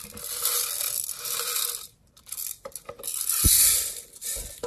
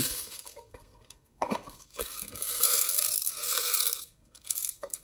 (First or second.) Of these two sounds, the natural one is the first